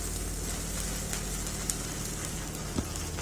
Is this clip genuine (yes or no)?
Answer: yes